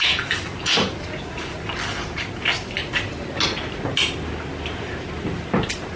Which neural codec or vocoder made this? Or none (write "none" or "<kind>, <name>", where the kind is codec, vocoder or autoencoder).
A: none